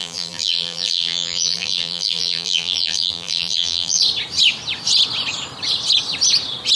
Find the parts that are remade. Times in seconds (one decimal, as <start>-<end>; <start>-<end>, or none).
0.0-4.0